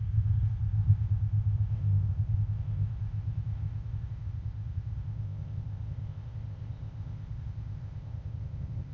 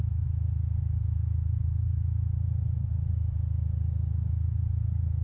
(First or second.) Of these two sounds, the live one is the second